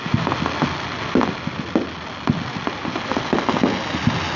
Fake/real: real